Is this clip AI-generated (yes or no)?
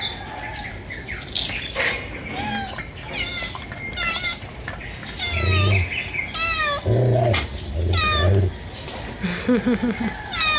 no